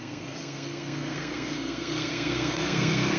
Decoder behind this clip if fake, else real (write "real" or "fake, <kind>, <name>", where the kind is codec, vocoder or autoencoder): fake, codec, SNAC